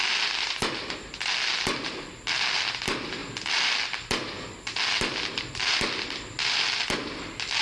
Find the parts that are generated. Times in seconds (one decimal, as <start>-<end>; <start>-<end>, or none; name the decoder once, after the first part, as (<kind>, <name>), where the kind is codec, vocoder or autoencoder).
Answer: none